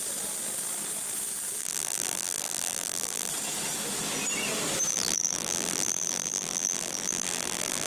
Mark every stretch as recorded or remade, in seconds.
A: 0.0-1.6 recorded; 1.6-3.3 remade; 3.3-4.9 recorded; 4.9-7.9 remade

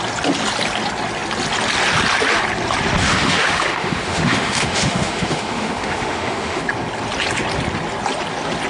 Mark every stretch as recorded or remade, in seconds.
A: 0.0-3.0 recorded; 3.0-6.6 remade; 6.6-8.7 recorded